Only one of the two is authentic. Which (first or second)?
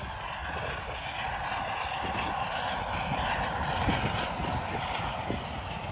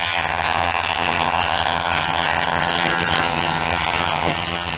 first